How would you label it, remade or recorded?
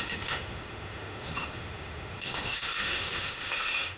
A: remade